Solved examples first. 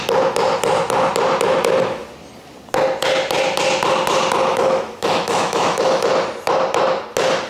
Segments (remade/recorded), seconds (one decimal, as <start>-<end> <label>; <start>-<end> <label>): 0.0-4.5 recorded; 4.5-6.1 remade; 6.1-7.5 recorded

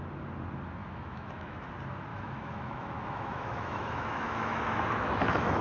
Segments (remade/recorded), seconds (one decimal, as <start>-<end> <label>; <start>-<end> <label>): 0.0-0.8 recorded; 0.8-1.7 remade; 1.7-2.1 recorded; 2.1-5.6 remade

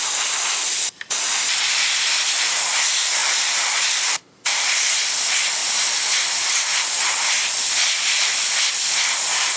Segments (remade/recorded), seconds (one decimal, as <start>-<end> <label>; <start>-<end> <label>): 0.0-9.6 recorded